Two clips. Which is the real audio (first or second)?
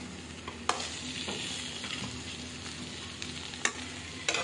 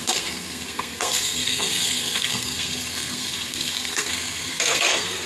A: first